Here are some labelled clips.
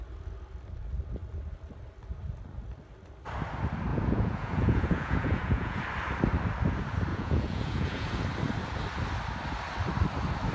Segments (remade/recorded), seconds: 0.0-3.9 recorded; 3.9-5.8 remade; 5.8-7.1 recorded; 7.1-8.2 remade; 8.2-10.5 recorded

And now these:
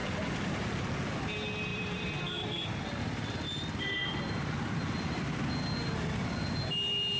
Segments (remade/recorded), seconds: 0.0-0.9 remade; 0.9-1.7 recorded; 1.7-3.0 remade; 3.0-4.0 recorded; 4.0-5.4 remade; 5.4-7.2 recorded

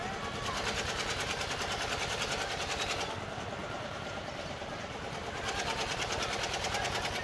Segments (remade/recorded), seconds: 0.0-3.6 recorded; 3.6-5.1 remade; 5.1-7.2 recorded

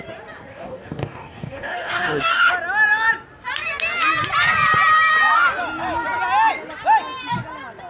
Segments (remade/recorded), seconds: 0.0-0.5 recorded; 0.5-2.5 remade; 2.5-7.9 recorded

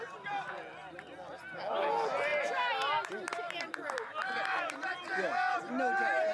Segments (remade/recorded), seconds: 0.0-2.3 recorded; 2.3-5.6 remade; 5.6-6.3 recorded